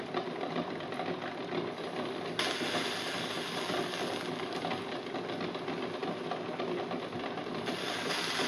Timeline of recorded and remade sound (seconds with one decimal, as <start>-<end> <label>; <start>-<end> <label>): 0.0-8.5 recorded